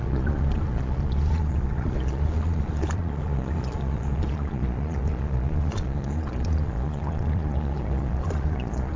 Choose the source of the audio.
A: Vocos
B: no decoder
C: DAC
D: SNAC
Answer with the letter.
A